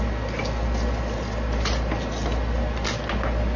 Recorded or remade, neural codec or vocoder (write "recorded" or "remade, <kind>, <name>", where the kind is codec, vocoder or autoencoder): recorded